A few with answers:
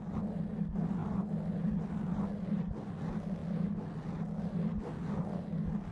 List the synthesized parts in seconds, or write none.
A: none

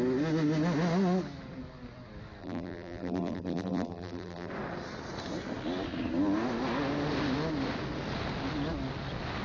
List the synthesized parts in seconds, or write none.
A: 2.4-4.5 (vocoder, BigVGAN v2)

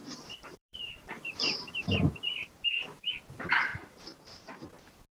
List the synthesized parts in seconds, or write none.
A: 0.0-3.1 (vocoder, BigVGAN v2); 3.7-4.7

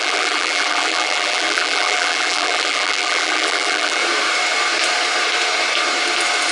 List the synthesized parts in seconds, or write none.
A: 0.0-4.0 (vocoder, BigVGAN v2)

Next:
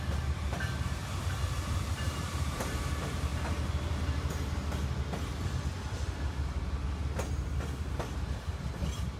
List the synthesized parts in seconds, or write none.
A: 0.0-1.0 (vocoder, BigVGAN v2); 1.9-3.3; 7.8-9.2

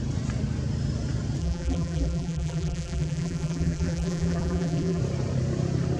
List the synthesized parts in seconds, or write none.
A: 1.4-5.0 (vocoder, BigVGAN v2)

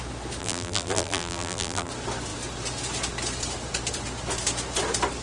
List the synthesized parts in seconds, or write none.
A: 0.4-1.9 (vocoder, BigVGAN v2)

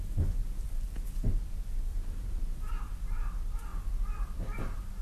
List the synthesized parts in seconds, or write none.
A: 0.4-1.4 (vocoder, BigVGAN v2); 1.9-2.7; 3.7-4.6